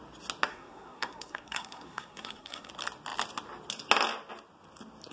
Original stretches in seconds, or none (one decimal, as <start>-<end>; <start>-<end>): 0.0-0.5; 2.7-5.1